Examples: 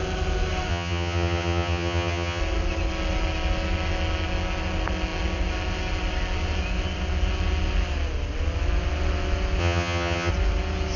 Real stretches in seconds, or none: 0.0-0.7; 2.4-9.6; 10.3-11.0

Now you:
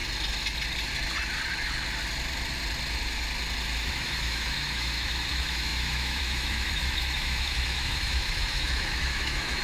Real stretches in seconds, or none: 0.0-3.9

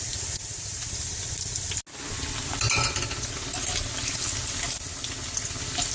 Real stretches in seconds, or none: 0.0-0.4; 0.9-5.9

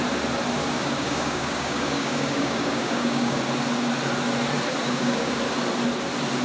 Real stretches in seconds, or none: 0.0-0.6; 3.4-4.8; 5.4-6.4

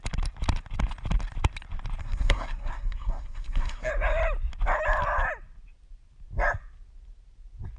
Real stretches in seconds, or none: 0.0-2.0; 3.9-7.8

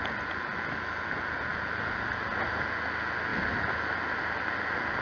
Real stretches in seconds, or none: 0.0-5.0

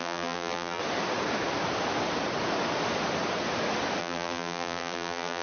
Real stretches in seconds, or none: 0.8-4.0

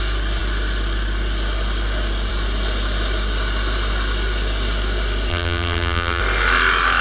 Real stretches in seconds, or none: 0.0-5.3; 6.2-7.0